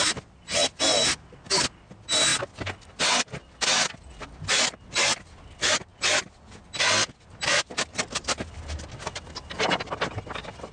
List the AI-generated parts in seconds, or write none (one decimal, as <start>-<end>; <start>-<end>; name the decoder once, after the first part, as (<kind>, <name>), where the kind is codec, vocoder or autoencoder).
none